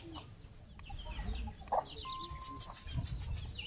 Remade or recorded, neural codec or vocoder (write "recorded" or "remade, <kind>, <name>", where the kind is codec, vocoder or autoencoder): recorded